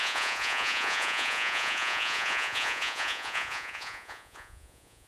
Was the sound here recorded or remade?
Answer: remade